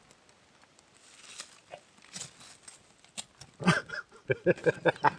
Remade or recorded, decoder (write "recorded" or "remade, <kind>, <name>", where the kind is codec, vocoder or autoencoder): recorded